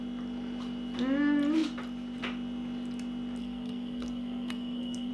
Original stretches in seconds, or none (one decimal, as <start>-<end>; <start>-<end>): 0.0-3.4